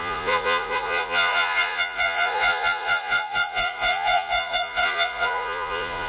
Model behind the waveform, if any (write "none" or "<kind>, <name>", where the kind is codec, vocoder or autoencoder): vocoder, Vocos